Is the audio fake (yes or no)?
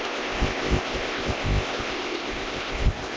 yes